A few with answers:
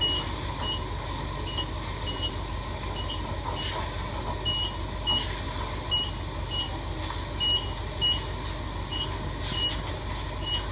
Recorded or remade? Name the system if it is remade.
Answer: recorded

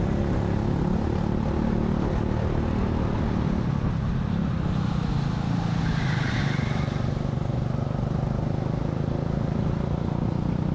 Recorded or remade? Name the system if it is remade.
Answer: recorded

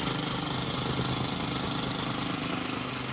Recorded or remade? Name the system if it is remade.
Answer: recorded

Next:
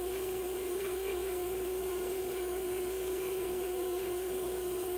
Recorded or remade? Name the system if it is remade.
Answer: remade, codec, SNAC